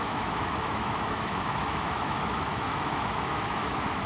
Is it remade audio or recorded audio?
remade